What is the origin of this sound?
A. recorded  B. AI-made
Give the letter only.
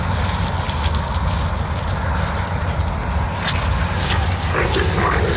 A